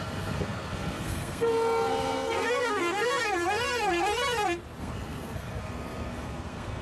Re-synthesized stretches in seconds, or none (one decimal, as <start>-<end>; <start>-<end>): 0.0-4.1; 4.8-6.8